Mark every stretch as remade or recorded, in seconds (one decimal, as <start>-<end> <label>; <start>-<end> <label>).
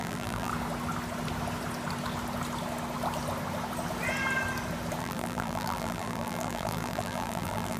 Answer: 0.0-0.5 remade; 0.5-5.0 recorded; 5.0-7.8 remade